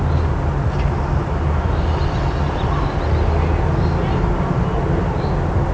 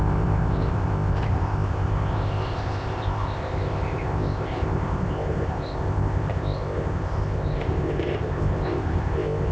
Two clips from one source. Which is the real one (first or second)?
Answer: first